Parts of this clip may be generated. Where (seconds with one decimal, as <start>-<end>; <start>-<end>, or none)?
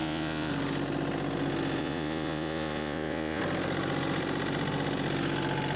0.0-0.5; 1.8-3.4